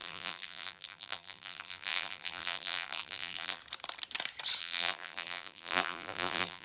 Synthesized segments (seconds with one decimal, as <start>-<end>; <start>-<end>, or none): 0.0-3.6; 4.6-6.6